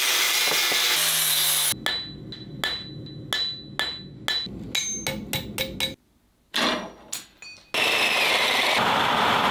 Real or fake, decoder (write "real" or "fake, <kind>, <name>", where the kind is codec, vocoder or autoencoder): real